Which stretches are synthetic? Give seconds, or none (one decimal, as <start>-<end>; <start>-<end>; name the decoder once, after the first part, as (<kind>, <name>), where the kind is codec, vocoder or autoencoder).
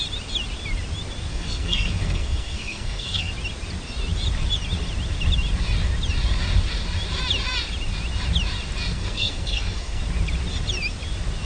1.3-3.3 (codec, SNAC); 8.9-10.0